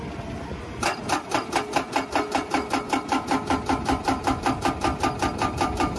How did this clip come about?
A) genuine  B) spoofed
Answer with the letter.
A